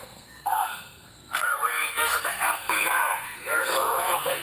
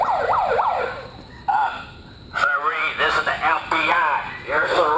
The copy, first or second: first